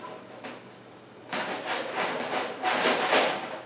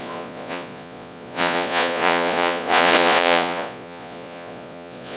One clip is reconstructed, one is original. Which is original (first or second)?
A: first